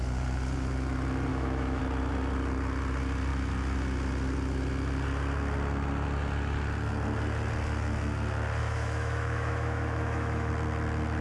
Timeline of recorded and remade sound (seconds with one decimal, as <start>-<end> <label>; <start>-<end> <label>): 0.0-1.3 recorded; 1.3-1.8 remade; 1.8-8.6 recorded; 8.6-10.5 remade; 10.5-11.2 recorded